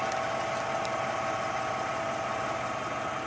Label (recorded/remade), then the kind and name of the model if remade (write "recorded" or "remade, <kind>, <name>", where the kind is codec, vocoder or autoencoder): recorded